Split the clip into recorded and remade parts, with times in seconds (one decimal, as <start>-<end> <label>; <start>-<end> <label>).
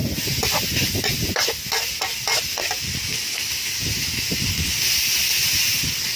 0.0-6.2 recorded